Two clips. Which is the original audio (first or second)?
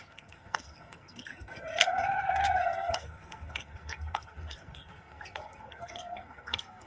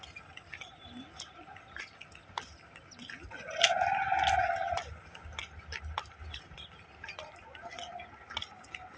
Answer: second